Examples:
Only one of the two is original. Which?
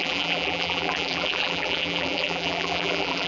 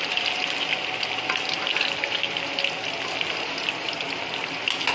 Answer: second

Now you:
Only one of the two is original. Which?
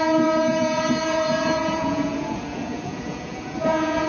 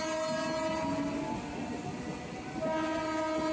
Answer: second